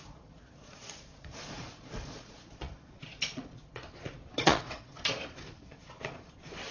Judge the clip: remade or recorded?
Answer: remade